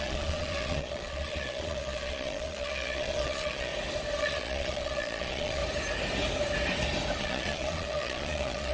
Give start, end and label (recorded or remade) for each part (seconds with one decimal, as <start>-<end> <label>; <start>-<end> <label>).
0.0-3.7 remade; 3.7-4.2 recorded; 4.2-5.6 remade; 5.6-7.2 recorded; 7.2-8.7 remade